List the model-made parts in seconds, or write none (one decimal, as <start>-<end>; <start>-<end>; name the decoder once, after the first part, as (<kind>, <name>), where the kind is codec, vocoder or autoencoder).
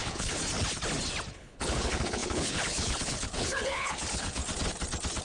0.0-0.4 (codec, HILCodec); 1.3-4.4